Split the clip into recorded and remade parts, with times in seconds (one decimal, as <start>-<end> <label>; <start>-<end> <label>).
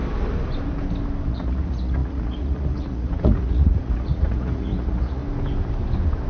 0.0-1.3 recorded; 1.3-5.2 remade; 5.2-6.3 recorded